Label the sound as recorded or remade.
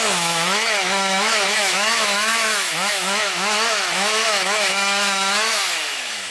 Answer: remade